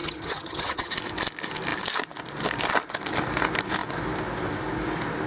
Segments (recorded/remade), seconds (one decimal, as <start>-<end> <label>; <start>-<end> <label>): 0.0-0.9 remade; 0.9-5.3 recorded